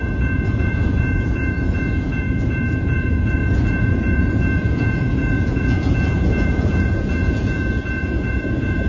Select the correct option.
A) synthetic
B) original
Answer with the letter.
A